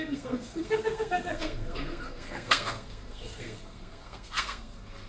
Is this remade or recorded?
remade